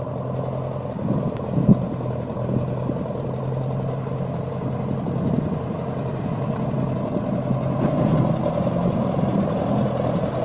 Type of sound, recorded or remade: recorded